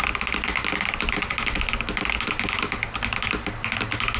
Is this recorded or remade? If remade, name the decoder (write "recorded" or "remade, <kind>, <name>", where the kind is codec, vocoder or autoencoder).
recorded